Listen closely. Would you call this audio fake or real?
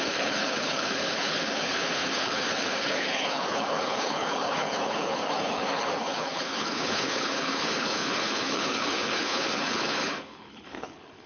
fake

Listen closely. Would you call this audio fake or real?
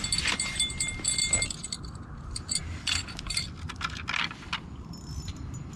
real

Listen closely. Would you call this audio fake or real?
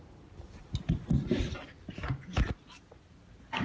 real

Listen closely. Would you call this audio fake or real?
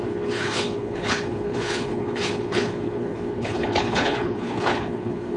fake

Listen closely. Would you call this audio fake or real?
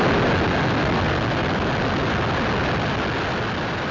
real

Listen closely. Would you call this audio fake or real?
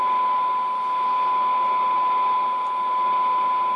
real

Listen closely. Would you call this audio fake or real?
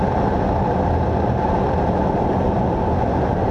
real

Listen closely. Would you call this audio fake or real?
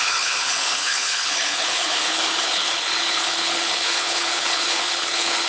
fake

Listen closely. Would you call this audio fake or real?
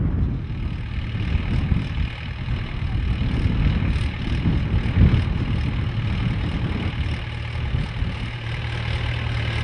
real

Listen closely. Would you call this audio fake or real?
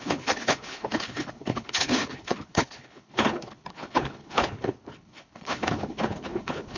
fake